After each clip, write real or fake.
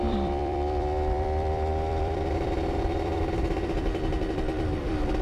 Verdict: fake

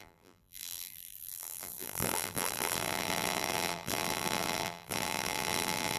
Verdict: fake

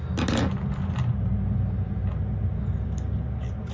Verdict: real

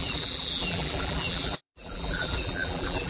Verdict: fake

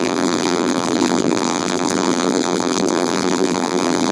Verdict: fake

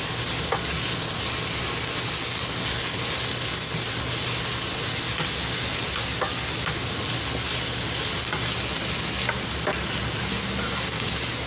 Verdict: real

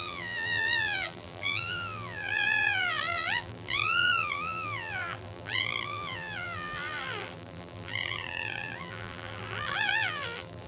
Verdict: fake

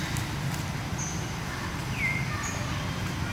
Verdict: real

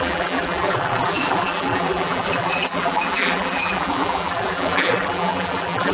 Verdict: fake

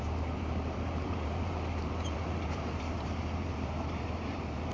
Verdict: fake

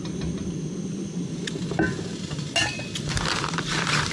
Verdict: real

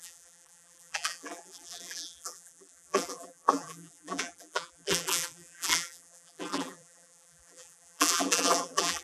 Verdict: fake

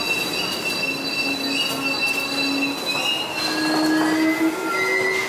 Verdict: real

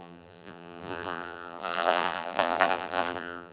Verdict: fake